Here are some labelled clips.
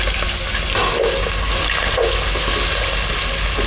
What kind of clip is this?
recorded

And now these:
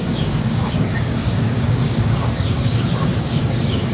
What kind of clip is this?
remade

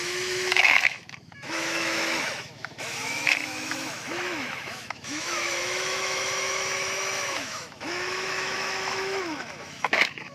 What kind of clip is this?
remade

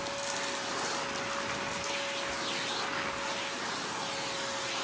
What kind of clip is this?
recorded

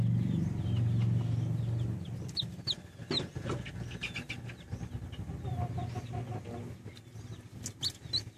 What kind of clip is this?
recorded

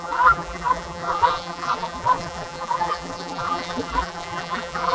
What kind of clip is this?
remade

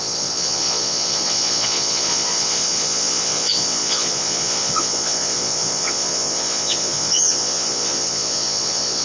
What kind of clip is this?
remade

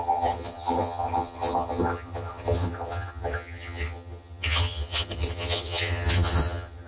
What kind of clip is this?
remade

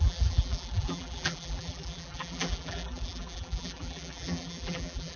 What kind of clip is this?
remade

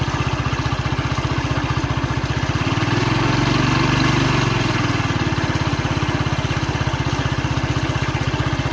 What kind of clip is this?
recorded